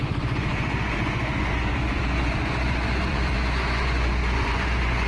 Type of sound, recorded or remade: remade